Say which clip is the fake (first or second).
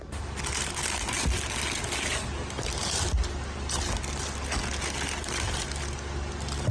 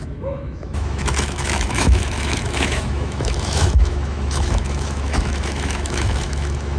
second